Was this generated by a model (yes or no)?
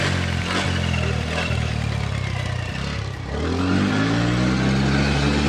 no